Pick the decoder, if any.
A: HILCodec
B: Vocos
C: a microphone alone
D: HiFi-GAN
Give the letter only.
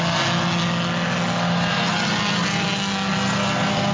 C